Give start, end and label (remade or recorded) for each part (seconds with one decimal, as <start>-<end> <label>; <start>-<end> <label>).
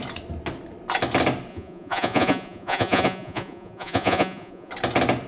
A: 0.0-1.5 recorded; 1.5-4.7 remade; 4.7-5.3 recorded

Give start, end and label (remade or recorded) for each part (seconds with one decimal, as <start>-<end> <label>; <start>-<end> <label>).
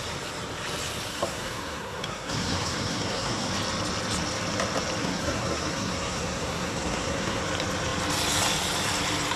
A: 0.0-1.1 recorded; 1.1-3.5 remade; 3.5-5.0 recorded; 5.0-7.4 remade; 7.4-9.4 recorded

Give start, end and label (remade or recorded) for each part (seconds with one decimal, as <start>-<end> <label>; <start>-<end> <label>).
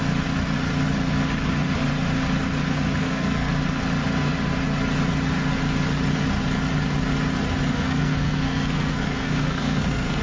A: 0.0-3.0 recorded; 3.0-3.5 remade; 3.5-7.7 recorded; 7.7-10.2 remade